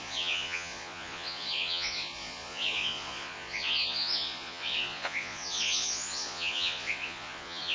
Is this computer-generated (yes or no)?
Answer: yes